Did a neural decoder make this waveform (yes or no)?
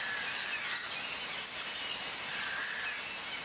no